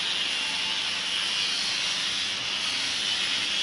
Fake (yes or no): no